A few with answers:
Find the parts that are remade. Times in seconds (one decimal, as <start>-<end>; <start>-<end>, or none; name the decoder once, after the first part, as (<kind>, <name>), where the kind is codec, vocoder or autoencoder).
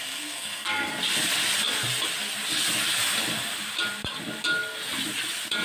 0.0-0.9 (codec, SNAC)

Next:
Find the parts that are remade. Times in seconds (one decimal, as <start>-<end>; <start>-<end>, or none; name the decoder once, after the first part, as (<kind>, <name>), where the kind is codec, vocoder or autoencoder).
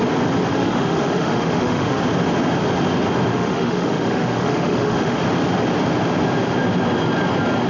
0.5-2.0 (autoencoder, DAC-VAE); 3.3-5.2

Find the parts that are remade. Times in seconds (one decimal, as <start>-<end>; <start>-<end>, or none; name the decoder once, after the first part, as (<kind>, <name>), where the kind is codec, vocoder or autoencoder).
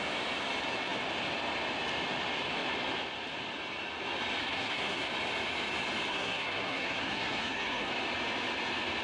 4.4-5.1 (codec, SNAC); 6.1-7.9